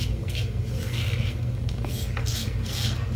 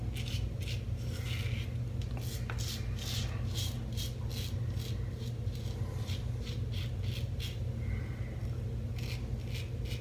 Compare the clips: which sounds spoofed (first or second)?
first